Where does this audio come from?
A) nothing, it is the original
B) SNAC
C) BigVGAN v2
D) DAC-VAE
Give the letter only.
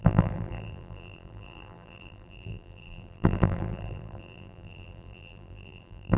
C